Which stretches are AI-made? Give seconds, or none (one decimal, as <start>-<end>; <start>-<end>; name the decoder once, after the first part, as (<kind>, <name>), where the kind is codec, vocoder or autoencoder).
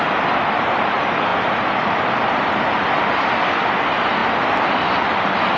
none